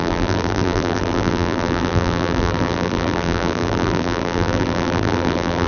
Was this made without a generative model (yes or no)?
no